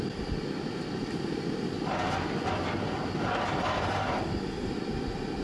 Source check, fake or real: real